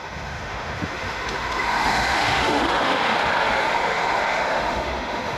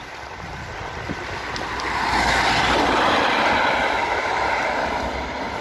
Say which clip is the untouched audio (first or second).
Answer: second